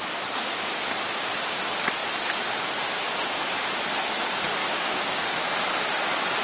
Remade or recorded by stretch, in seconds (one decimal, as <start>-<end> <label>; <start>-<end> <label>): 0.0-4.6 recorded; 4.6-5.4 remade; 5.4-6.4 recorded